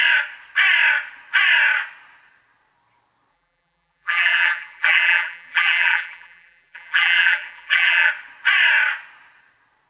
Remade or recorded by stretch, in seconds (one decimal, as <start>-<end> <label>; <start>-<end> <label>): 0.0-3.3 recorded; 3.3-8.1 remade; 8.1-9.9 recorded